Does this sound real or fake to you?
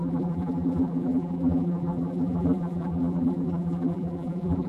fake